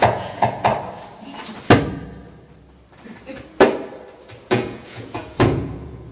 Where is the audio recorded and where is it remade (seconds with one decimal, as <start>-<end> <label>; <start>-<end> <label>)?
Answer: 0.0-0.7 remade; 0.7-4.4 recorded; 4.4-6.1 remade